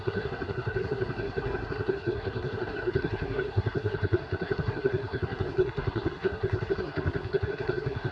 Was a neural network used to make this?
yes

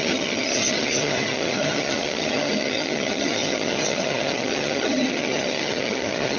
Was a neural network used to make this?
yes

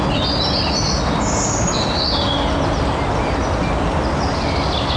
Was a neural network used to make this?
no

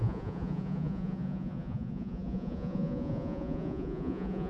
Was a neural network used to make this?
yes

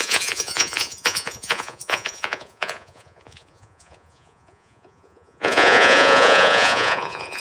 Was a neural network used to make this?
yes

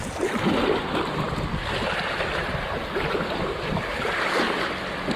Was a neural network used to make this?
no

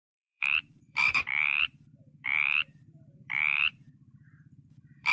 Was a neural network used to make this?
yes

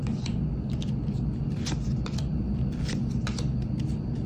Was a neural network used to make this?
no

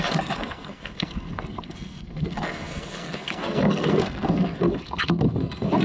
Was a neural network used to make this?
yes